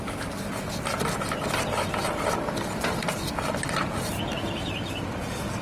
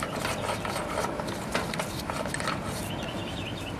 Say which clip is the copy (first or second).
second